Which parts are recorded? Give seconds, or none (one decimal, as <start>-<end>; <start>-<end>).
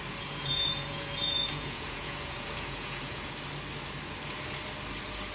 0.0-0.4; 3.3-5.3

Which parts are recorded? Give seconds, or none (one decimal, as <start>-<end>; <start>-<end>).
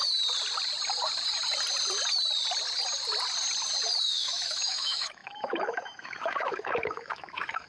0.0-4.0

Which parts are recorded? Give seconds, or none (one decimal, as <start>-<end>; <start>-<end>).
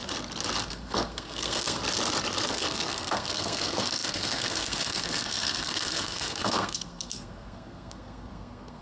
0.0-0.7; 1.8-2.5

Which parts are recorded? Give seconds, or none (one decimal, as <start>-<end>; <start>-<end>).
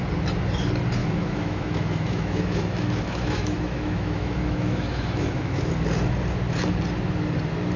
0.0-1.0; 5.7-7.8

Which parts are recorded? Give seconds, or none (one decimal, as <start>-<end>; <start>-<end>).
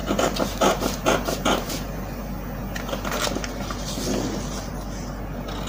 1.7-5.7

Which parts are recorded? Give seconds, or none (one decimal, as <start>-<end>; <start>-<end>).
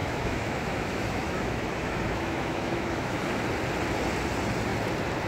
3.2-5.3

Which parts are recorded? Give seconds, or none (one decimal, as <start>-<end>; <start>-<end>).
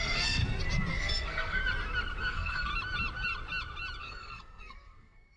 0.4-0.9; 1.6-2.2; 2.7-4.0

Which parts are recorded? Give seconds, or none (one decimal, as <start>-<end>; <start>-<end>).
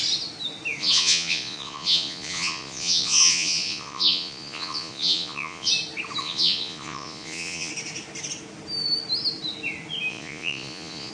0.0-0.8; 5.7-6.2; 7.7-10.1